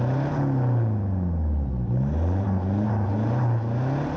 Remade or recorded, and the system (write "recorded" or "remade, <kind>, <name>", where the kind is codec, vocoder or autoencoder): recorded